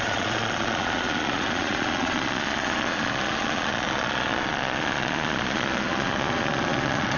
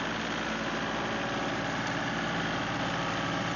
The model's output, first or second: first